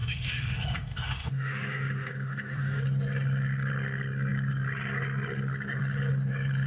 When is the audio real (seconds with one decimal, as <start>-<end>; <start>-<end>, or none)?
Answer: 2.8-6.7